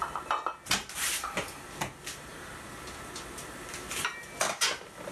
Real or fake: real